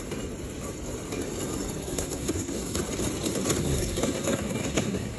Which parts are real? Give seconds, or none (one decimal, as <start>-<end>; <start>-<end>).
0.0-1.8; 2.8-3.6